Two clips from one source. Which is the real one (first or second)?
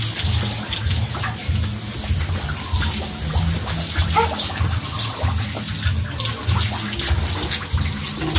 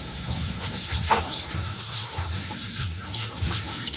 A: first